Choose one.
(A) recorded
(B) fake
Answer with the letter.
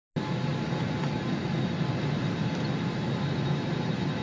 A